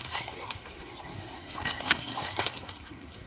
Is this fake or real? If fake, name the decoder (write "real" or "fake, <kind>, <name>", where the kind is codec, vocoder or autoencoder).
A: fake, codec, SNAC